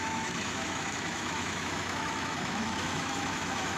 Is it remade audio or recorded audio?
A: remade